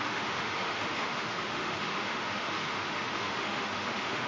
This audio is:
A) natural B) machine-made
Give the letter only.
B